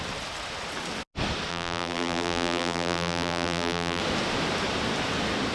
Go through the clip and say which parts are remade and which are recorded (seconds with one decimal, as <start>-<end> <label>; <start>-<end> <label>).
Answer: 0.0-1.5 recorded; 1.5-4.0 remade; 4.0-5.5 recorded